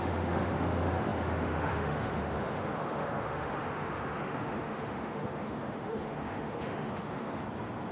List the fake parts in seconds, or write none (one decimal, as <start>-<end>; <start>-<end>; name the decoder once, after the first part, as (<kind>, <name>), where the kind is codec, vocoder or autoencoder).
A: 0.0-7.4 (autoencoder, DAC-VAE)